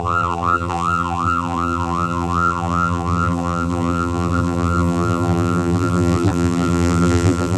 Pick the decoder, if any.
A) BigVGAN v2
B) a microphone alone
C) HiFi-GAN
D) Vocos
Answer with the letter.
A